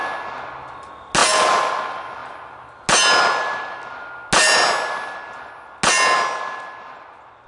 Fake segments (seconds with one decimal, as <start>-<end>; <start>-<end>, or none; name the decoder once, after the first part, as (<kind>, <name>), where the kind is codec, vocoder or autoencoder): none